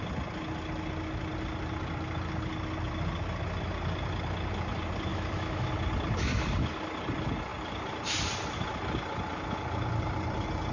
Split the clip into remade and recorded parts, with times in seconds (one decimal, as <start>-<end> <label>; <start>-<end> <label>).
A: 0.0-5.1 recorded; 5.1-5.7 remade; 5.7-10.7 recorded